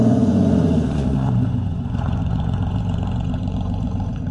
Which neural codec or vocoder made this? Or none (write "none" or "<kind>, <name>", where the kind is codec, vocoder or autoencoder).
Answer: vocoder, Vocos